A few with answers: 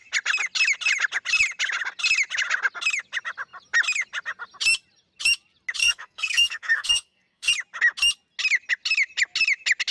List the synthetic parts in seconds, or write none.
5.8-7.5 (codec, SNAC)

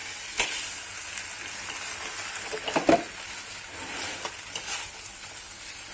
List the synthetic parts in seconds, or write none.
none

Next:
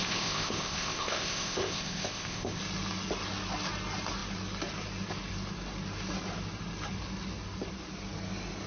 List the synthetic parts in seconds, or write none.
0.0-2.6 (codec, ZipCodec)

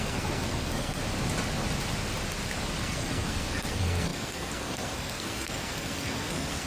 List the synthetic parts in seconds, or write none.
0.0-1.0 (codec, SNAC); 2.8-6.7

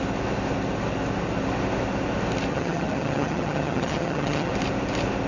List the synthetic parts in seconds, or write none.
2.5-4.5 (vocoder, HiFi-GAN)

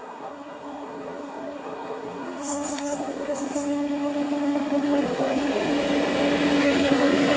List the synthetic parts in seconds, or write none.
0.0-5.7 (codec, SNAC); 6.6-7.4

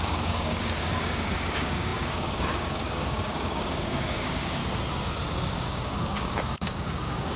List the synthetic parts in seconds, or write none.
0.0-4.6 (codec, DAC); 5.5-7.4

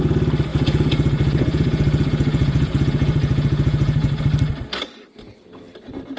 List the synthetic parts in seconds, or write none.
0.5-4.2 (vocoder, Vocos)